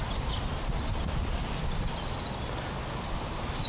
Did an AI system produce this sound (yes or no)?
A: no